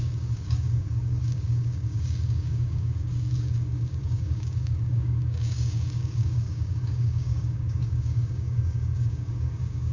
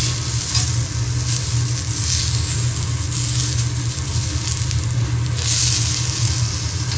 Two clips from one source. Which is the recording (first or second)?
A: second